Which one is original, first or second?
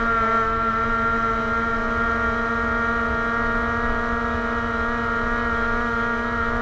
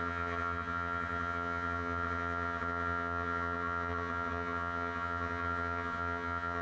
first